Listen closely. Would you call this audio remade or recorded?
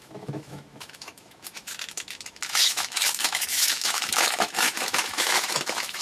remade